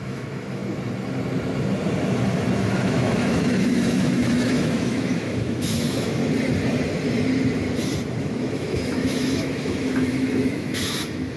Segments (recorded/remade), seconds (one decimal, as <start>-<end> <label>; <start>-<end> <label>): 0.0-0.6 remade; 0.6-2.6 recorded; 2.6-6.2 remade; 6.2-8.2 recorded; 8.2-11.4 remade